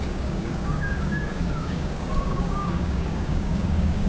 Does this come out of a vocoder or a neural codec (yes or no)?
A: yes